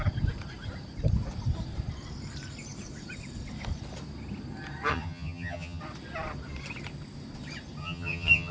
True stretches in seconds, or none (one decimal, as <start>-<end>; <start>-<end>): 0.0-4.9; 5.8-7.8